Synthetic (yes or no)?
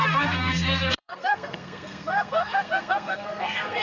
yes